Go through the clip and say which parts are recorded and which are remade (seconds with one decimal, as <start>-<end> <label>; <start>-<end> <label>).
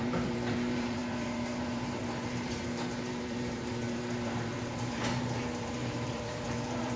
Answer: 0.0-7.0 remade